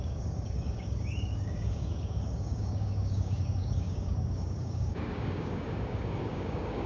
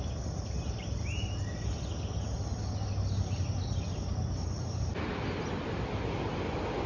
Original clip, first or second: second